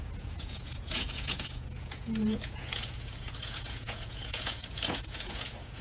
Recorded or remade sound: remade